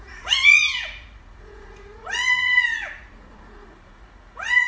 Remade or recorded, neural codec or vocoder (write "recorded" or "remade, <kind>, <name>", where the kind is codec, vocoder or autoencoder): remade, vocoder, Vocos